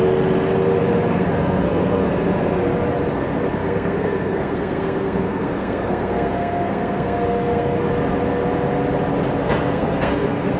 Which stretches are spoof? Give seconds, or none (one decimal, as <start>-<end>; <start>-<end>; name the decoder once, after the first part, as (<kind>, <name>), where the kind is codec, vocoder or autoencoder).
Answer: 1.1-2.1 (codec, SNAC); 3.6-7.9; 9.4-10.6

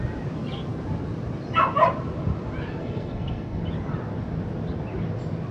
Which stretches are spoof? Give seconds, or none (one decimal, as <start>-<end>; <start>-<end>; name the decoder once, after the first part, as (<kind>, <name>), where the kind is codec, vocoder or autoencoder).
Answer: 2.8-3.6 (codec, SNAC)

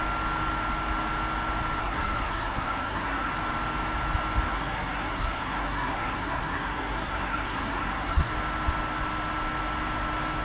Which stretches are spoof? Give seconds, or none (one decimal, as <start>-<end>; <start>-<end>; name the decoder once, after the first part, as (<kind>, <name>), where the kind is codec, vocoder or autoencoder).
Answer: 1.8-3.3 (codec, SNAC); 4.5-8.3

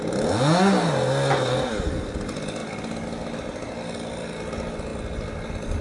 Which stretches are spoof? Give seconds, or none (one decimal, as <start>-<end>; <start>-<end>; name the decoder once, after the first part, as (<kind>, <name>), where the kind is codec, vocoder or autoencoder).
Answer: none

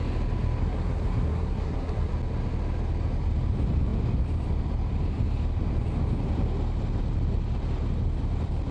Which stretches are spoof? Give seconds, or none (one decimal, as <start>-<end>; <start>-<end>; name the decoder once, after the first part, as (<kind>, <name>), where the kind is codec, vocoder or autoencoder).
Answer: 0.6-2.1 (codec, SNAC)

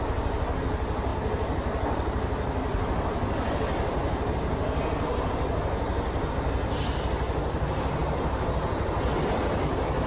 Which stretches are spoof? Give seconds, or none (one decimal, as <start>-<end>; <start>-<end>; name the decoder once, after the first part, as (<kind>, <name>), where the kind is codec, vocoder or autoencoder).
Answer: none

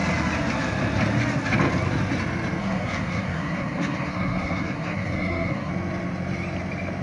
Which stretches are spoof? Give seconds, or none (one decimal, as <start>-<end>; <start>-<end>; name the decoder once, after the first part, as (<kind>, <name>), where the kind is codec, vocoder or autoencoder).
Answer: 2.6-5.7 (codec, SNAC)

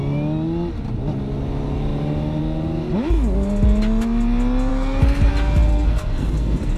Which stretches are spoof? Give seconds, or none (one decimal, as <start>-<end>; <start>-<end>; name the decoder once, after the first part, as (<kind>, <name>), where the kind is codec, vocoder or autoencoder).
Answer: 4.7-5.3 (codec, SNAC); 5.7-6.8